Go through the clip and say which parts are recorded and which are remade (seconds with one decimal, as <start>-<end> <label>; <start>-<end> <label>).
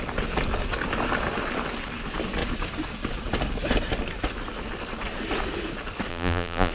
0.0-6.1 recorded; 6.1-6.7 remade